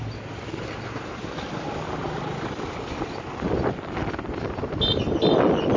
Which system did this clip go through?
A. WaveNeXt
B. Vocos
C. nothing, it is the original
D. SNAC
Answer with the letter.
C